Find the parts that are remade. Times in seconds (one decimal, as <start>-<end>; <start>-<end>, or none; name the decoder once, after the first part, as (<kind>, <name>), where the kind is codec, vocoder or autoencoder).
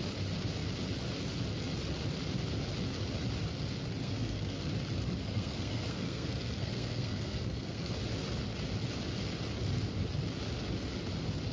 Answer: 4.0-4.7 (codec, SNAC); 5.2-7.9